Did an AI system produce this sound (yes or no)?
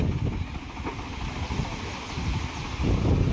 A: no